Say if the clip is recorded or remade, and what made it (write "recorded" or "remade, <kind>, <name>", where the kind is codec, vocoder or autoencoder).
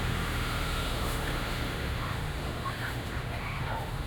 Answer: remade, autoencoder, DAC-VAE